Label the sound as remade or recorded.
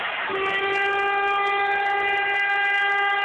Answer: recorded